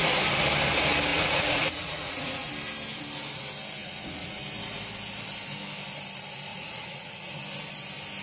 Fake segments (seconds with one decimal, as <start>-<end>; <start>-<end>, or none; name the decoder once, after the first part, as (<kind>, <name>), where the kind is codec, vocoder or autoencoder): 1.1-2.5 (vocoder, Vocos); 3.8-4.4; 6.5-7.4